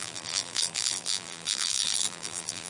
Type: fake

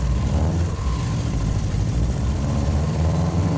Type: fake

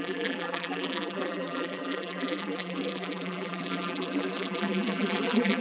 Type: fake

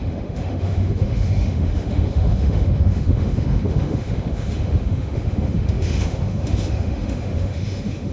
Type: fake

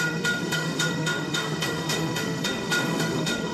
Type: fake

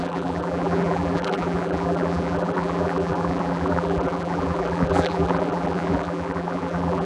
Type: fake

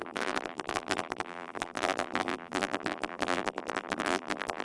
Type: fake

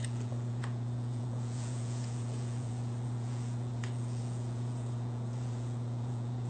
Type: fake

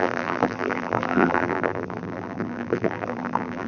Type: fake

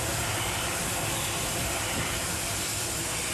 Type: real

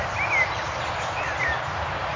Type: real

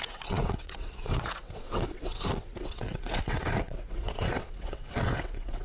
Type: fake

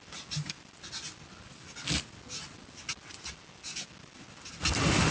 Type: real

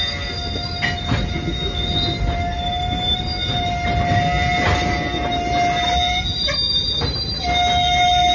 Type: real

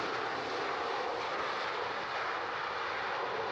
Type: real